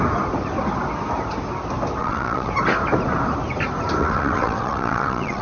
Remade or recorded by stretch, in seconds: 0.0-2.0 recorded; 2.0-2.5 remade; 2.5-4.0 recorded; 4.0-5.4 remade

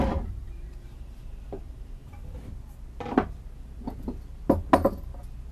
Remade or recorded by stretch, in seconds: 0.0-2.0 remade; 2.0-5.5 recorded

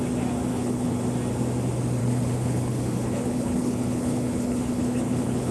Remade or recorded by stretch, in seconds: 0.0-0.5 recorded; 0.5-1.0 remade; 1.0-2.0 recorded; 2.0-5.5 remade

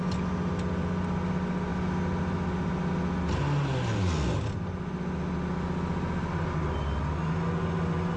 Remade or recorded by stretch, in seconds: 0.0-8.2 recorded